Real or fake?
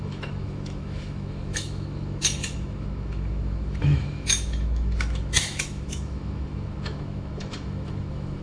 fake